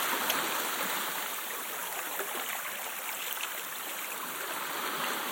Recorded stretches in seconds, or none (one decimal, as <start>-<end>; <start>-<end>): 0.0-5.3